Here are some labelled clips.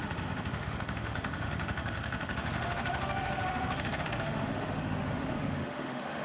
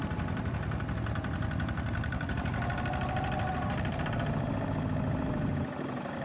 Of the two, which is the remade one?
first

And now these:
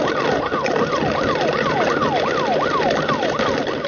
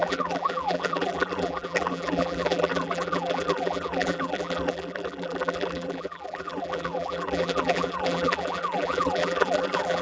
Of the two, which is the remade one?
second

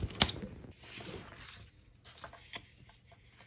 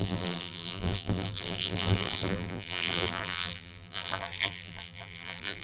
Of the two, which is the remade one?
second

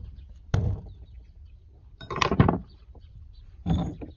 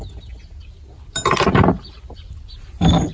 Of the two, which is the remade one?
first